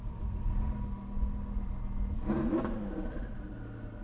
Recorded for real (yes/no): yes